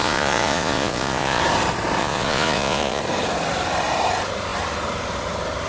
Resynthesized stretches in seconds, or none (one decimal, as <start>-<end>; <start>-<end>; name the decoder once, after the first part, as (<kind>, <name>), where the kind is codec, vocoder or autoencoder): 0.0-1.4 (vocoder, Vocos); 2.0-3.0